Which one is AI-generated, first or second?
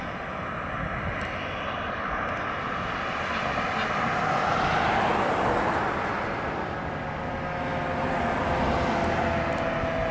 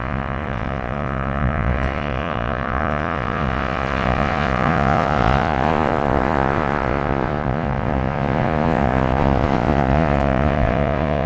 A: second